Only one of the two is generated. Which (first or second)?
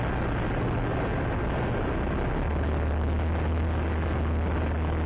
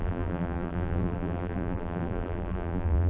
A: second